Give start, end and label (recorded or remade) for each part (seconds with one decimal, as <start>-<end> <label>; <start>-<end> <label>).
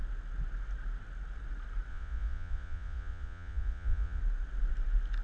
0.0-1.9 recorded; 1.9-4.2 remade; 4.2-5.2 recorded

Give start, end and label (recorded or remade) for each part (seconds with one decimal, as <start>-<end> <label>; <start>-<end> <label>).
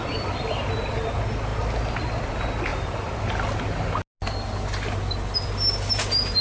0.0-2.7 recorded; 2.7-3.2 remade; 3.2-6.4 recorded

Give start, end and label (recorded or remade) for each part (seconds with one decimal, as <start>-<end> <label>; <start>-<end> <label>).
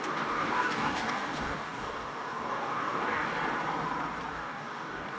0.0-3.3 remade; 3.3-4.3 recorded; 4.3-5.2 remade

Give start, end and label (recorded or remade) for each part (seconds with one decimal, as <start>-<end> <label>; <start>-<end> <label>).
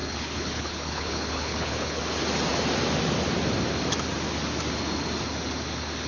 0.0-2.0 remade; 2.0-6.1 recorded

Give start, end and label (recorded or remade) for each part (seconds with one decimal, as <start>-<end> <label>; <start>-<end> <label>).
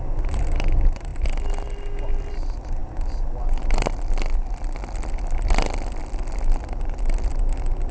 0.0-7.9 recorded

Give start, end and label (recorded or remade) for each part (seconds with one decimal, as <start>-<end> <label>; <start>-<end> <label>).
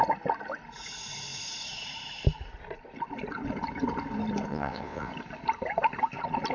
0.0-4.5 recorded; 4.5-5.1 remade; 5.1-6.5 recorded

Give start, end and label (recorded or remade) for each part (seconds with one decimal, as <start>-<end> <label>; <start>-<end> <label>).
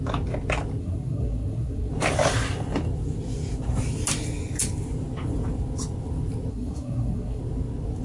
0.0-0.8 recorded; 0.8-1.9 remade; 1.9-6.5 recorded; 6.5-7.4 remade; 7.4-8.0 recorded